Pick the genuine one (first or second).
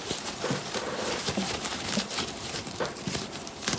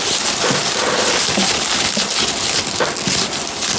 second